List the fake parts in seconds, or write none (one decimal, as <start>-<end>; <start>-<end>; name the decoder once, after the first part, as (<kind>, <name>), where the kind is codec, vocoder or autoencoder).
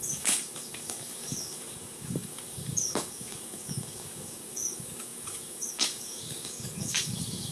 0.0-7.5 (codec, DAC)